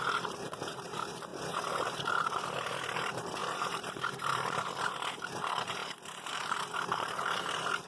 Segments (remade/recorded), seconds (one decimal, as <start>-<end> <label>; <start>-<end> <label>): 0.0-7.9 remade